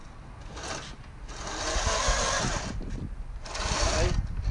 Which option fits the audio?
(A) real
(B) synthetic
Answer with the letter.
A